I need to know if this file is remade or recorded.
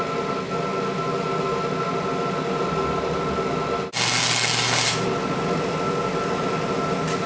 recorded